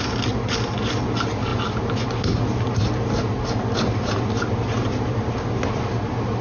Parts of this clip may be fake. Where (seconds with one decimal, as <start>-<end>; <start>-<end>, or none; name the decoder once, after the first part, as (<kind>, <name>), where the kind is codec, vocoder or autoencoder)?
none